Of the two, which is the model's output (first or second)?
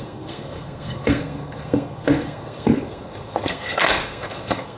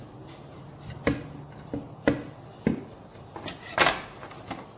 first